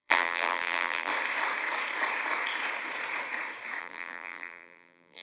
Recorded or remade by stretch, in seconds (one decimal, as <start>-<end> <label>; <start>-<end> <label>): 0.0-1.1 remade; 1.1-3.8 recorded; 3.8-5.2 remade